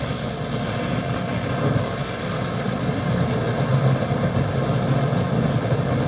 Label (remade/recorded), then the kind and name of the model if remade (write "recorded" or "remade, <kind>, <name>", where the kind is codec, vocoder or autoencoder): recorded